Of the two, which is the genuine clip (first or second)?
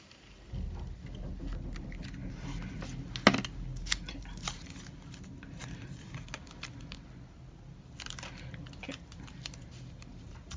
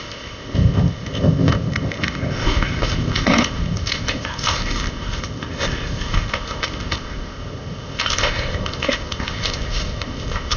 first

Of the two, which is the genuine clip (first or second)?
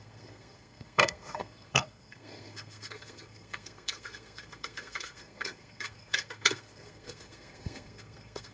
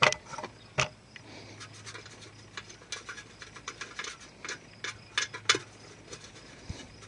second